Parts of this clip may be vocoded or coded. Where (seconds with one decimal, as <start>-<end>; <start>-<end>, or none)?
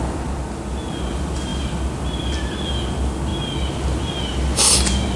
none